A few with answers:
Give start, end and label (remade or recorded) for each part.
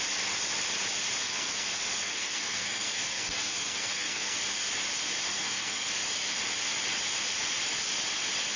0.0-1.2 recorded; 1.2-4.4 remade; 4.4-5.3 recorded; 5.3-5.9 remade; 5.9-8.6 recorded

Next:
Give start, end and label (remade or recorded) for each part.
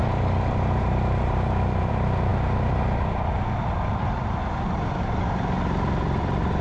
0.0-6.6 recorded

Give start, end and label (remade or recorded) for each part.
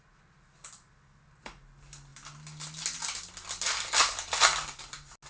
0.0-5.3 recorded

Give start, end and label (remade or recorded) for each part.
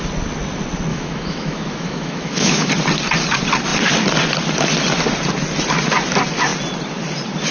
0.0-0.9 recorded; 0.9-2.7 remade; 2.7-7.5 recorded